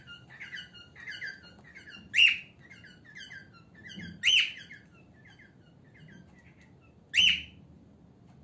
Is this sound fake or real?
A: real